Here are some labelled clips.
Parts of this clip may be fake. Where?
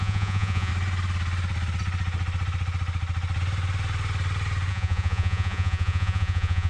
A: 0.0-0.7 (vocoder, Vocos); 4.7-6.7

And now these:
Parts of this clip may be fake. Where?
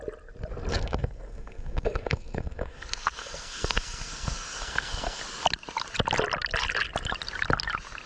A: 0.7-5.2 (codec, SNAC)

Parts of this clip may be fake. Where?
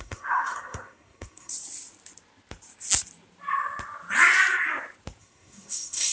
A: 0.0-1.5 (codec, SNAC); 5.2-6.1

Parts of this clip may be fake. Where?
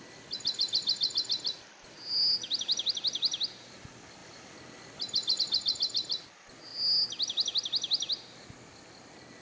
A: none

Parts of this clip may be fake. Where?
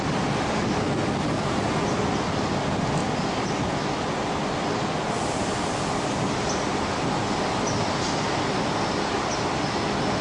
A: none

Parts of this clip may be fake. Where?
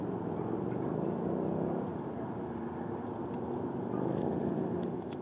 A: none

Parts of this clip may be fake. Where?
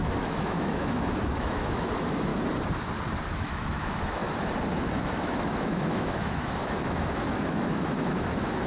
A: 0.0-2.3 (autoencoder, DAC-VAE); 3.4-4.2; 5.0-8.7